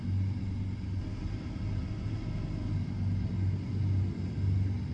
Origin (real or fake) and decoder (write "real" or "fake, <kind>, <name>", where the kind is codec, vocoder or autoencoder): real